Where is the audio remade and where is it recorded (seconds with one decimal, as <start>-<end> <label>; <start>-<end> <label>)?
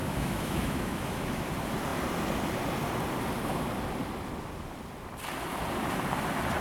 0.0-1.5 remade; 1.5-6.6 recorded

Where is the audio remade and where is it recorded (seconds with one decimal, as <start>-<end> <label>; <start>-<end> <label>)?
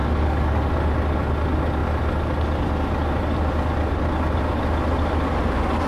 0.0-0.7 remade; 0.7-5.9 recorded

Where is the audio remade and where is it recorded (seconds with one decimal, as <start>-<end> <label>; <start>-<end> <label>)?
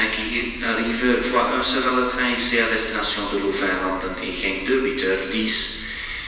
0.0-0.4 recorded; 0.4-1.9 remade; 1.9-3.0 recorded; 3.0-3.9 remade; 3.9-6.3 recorded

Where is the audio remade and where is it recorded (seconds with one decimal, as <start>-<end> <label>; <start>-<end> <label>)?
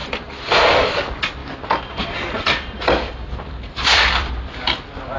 0.0-0.9 remade; 0.9-1.4 recorded; 1.4-4.5 remade; 4.5-5.2 recorded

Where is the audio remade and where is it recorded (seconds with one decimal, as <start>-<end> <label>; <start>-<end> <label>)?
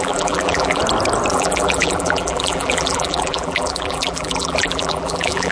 0.0-0.8 remade; 0.8-1.3 recorded; 1.3-5.5 remade